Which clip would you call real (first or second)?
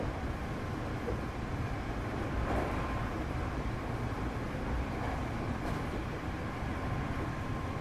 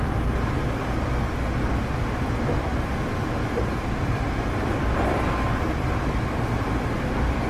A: second